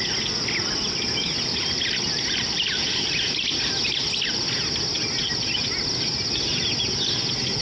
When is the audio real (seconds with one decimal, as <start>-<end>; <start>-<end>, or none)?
0.0-1.5; 3.1-7.6